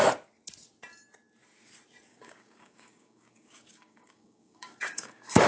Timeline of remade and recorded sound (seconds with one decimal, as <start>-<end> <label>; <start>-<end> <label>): 0.0-2.1 recorded; 2.1-5.5 remade